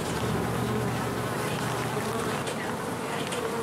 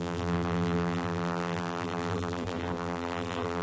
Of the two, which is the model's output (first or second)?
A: second